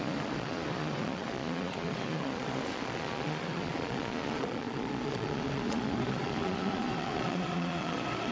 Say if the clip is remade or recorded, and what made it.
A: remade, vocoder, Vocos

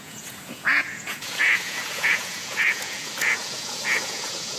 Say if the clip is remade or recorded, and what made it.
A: remade, vocoder, Vocos